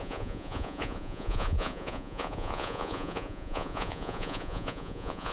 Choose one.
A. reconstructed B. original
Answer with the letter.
A